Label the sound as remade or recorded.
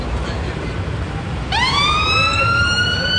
remade